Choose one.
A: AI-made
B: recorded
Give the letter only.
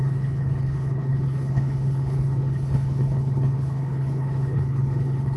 A